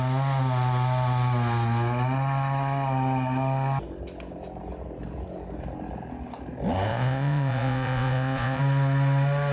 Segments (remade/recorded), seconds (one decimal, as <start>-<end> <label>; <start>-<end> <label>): 0.0-6.9 recorded; 6.9-8.6 remade; 8.6-9.5 recorded